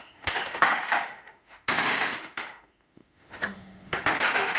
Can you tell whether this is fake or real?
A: fake